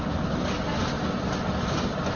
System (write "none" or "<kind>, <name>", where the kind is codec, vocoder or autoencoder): none